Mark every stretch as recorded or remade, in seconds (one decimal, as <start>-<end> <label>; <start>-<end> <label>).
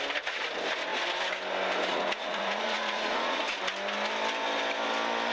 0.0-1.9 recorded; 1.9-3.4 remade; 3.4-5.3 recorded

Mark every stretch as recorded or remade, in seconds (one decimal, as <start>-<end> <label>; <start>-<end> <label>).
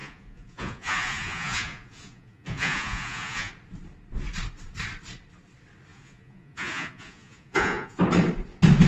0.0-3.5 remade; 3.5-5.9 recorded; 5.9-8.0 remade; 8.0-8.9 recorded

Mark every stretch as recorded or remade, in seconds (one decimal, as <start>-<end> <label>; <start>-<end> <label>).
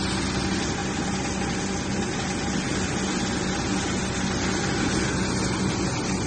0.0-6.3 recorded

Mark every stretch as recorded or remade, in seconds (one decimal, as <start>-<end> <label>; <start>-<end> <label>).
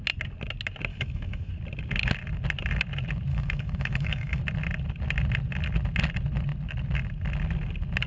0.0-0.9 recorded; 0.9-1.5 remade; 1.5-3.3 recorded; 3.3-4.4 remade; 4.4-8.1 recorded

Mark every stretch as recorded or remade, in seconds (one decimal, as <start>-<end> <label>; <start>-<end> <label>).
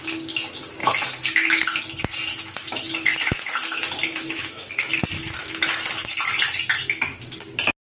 0.0-0.8 recorded; 0.8-1.8 remade; 1.8-2.3 recorded; 2.3-5.7 remade; 5.7-8.0 recorded